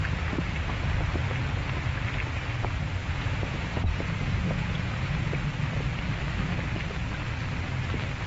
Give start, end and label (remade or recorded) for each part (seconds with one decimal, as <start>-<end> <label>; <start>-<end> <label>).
0.0-3.0 recorded; 3.0-5.3 remade; 5.3-8.3 recorded